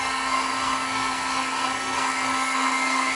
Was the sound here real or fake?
fake